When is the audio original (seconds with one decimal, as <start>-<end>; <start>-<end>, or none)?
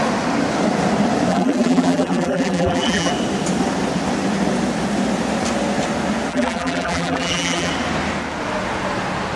0.0-1.3; 3.1-6.3; 7.7-9.4